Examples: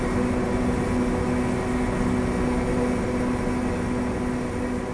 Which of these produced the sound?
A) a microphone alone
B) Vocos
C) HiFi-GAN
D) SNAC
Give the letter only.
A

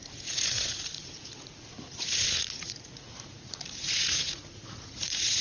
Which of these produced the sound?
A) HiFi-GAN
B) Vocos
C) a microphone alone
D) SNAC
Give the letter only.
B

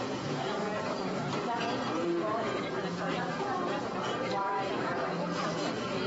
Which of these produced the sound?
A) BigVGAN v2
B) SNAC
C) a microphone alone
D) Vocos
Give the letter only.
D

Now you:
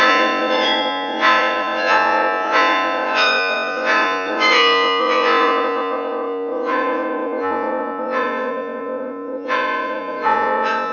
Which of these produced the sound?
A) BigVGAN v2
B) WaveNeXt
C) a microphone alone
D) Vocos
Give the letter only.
D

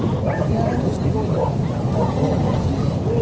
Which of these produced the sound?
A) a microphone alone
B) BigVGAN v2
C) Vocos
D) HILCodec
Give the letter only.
A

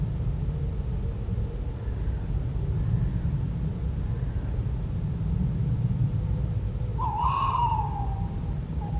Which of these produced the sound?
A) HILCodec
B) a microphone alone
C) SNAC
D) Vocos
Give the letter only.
B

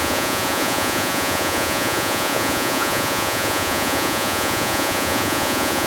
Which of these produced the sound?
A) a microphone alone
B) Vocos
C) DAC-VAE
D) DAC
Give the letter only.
B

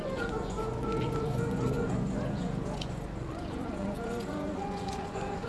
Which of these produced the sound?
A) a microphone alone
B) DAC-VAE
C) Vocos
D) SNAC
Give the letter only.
C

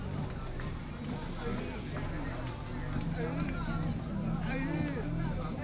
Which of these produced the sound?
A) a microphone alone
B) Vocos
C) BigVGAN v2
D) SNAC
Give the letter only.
A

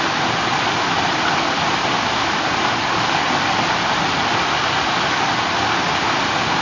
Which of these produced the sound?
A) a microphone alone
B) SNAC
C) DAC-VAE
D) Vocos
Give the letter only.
A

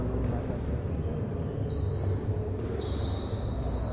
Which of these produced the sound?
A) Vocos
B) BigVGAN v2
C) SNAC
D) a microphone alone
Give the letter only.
D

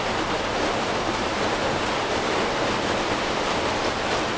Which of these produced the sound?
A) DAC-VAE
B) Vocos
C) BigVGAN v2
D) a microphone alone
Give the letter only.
D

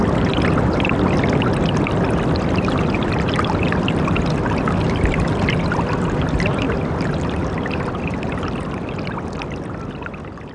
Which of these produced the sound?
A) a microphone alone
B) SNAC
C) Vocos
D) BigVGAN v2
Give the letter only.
A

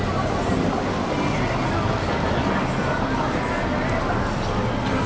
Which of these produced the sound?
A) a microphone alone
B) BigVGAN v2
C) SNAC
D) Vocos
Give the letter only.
A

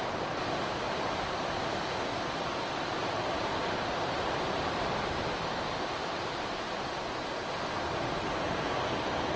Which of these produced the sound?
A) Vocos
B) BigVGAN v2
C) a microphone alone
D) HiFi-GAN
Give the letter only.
C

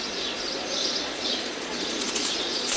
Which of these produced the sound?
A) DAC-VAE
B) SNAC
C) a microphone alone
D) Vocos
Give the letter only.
D